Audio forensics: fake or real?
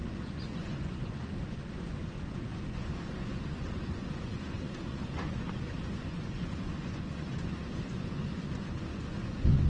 fake